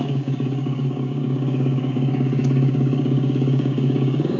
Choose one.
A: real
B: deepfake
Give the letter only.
B